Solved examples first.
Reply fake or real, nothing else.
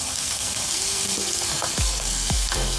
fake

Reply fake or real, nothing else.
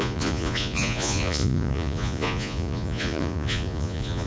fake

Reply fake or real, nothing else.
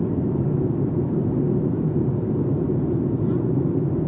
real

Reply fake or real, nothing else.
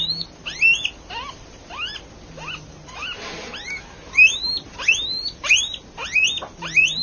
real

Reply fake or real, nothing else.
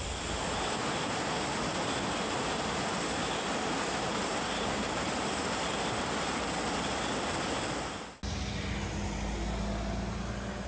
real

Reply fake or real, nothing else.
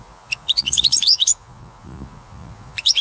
fake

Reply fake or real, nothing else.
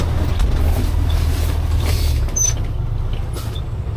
real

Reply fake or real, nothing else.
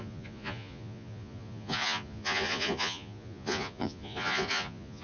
fake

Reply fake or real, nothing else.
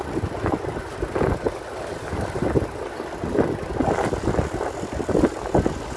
real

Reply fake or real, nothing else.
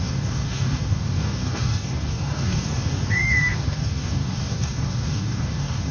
fake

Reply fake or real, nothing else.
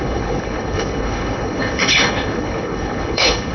fake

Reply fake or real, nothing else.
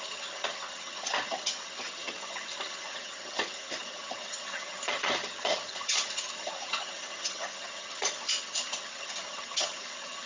fake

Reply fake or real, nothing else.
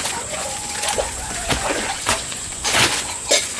fake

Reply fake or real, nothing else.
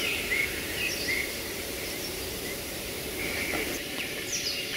fake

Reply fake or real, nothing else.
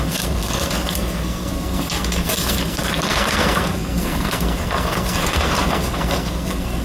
fake